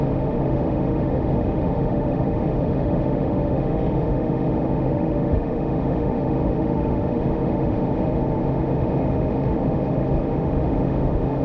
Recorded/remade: remade